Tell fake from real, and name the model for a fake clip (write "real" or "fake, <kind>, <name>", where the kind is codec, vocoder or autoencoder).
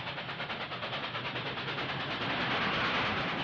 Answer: real